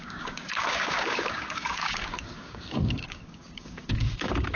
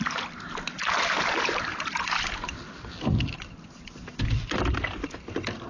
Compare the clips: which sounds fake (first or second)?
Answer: first